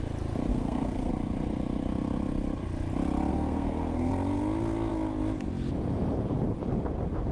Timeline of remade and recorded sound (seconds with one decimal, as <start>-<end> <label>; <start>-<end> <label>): 0.0-0.5 recorded; 0.5-1.1 remade; 1.1-3.3 recorded; 3.3-4.1 remade; 4.1-7.3 recorded